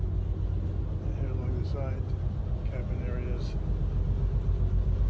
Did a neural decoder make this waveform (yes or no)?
no